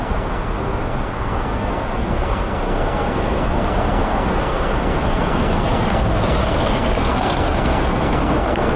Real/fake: fake